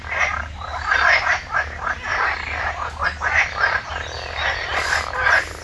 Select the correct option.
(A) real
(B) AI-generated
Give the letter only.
A